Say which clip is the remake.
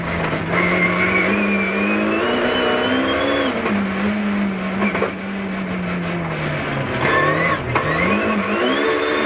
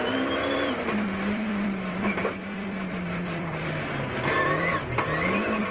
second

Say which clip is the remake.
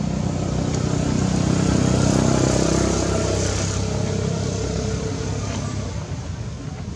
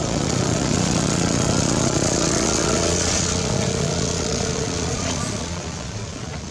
second